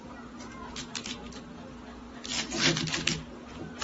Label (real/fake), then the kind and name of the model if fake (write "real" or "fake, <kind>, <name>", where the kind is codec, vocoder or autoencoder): real